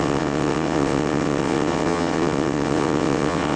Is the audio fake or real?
fake